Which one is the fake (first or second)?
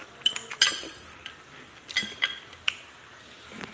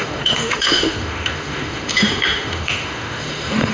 second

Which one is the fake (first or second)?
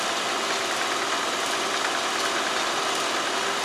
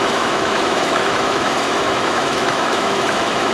second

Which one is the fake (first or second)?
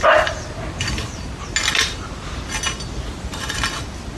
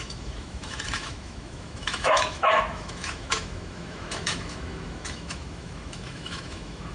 second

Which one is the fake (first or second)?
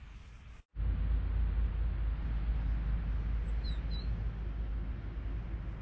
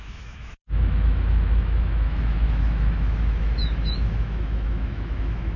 second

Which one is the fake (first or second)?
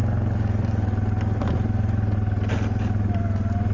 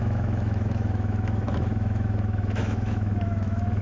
second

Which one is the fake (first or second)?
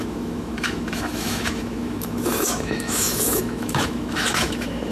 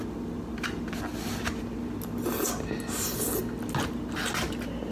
first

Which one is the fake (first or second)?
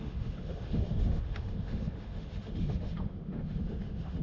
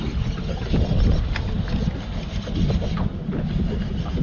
first